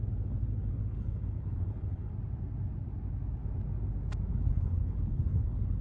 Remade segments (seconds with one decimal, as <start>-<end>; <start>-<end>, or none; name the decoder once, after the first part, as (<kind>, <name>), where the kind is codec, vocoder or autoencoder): 0.0-2.1 (codec, HILCodec); 4.3-5.8